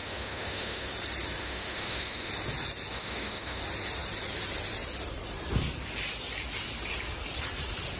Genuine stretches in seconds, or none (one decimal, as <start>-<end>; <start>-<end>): 0.9-1.4; 2.3-2.9; 3.6-8.0